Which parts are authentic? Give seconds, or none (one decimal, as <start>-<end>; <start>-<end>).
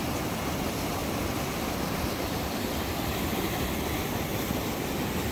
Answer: 0.0-1.0; 3.0-4.3